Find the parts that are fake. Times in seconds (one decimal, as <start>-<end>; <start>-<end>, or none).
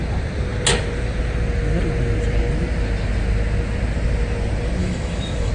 4.8-5.5